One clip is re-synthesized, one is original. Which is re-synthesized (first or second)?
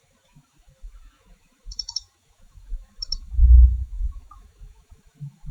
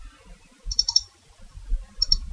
first